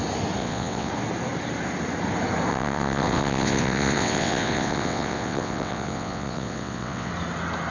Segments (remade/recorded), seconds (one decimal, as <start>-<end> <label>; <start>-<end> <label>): 0.0-0.4 recorded; 0.4-0.9 remade; 0.9-2.5 recorded; 2.5-7.1 remade; 7.1-7.7 recorded